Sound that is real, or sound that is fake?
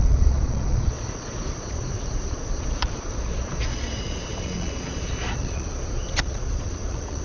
fake